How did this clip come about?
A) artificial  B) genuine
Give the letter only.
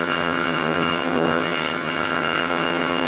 A